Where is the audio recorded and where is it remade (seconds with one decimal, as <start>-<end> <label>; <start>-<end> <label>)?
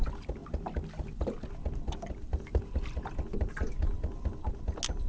0.0-5.1 recorded